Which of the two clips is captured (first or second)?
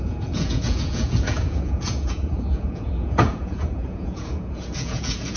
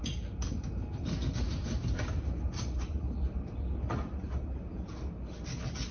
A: second